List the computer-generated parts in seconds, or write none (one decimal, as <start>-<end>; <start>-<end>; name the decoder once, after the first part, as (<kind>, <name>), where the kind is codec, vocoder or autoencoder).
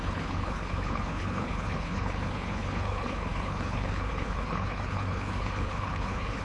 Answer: 0.0-6.4 (codec, HILCodec)